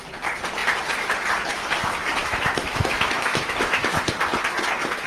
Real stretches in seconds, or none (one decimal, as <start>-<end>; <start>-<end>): 0.0-2.2; 4.0-5.1